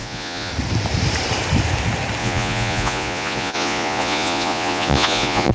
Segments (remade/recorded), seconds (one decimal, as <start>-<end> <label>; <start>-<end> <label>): 0.0-0.5 remade; 0.5-2.2 recorded; 2.2-5.5 remade